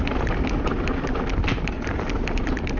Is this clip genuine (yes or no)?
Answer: yes